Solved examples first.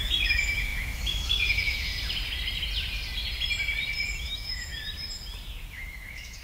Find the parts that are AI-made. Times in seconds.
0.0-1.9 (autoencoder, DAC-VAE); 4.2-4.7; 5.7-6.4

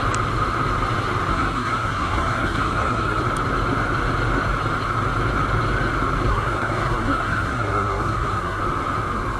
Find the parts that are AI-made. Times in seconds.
1.3-3.2 (codec, SNAC); 6.3-8.6